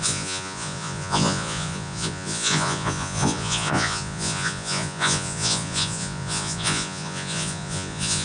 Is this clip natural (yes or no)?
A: no